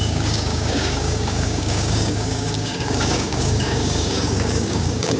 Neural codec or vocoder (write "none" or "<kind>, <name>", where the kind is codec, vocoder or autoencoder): codec, DAC